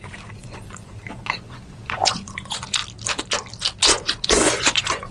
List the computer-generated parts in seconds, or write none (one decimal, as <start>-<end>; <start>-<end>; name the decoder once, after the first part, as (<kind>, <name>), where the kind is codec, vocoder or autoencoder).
0.0-2.8 (vocoder, Vocos); 3.8-5.1